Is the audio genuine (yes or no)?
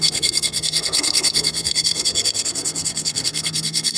no